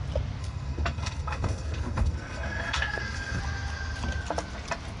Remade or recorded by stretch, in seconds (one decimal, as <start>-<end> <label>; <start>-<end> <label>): 0.0-0.4 recorded; 0.4-3.4 remade; 3.4-5.0 recorded